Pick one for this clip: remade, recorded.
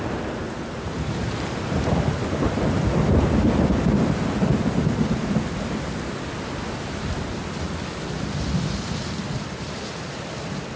recorded